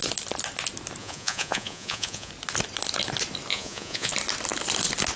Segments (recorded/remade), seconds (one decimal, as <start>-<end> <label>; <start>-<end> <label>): 0.0-1.0 recorded; 1.0-2.3 remade; 2.3-3.5 recorded; 3.5-4.1 remade; 4.1-5.2 recorded

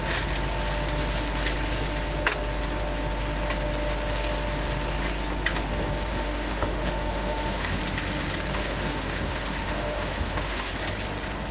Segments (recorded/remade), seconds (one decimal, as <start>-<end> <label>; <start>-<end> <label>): 0.0-6.1 recorded; 6.1-7.8 remade; 7.8-8.5 recorded; 8.5-10.7 remade; 10.7-11.5 recorded

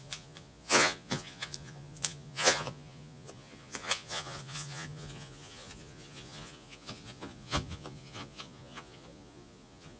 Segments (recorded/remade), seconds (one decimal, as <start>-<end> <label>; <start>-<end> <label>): 0.0-10.0 remade